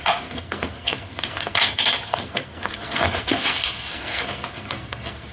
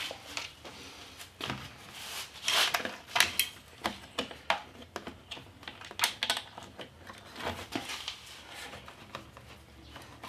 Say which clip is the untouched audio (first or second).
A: second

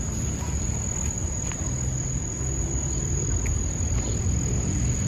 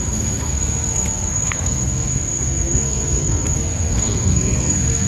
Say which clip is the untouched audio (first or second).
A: first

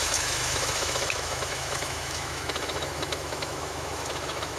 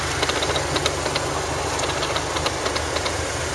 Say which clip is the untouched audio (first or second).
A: second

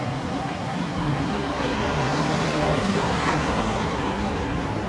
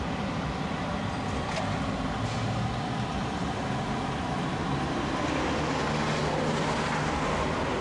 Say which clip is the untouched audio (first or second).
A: second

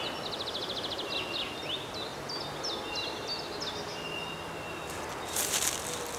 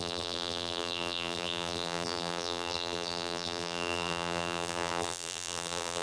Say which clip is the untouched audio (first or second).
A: first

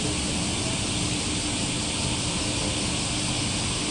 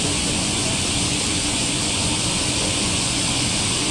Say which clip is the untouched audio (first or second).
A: first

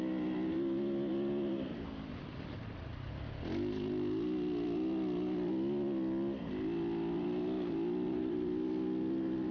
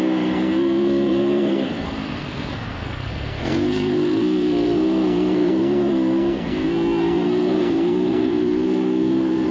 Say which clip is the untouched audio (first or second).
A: first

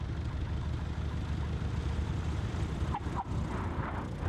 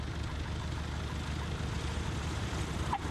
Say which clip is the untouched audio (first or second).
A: second